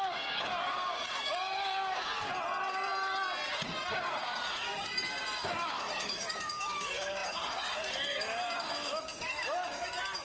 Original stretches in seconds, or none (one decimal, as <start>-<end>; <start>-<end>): 2.3-3.5